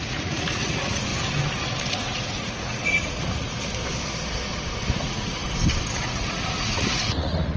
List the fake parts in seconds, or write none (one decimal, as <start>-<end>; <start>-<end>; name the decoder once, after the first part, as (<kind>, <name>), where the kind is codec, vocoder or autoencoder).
0.0-1.1 (vocoder, Vocos); 1.8-3.7; 5.0-5.4; 5.9-7.6